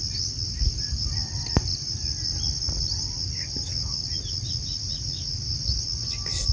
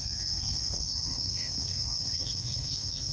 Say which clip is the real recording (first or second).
first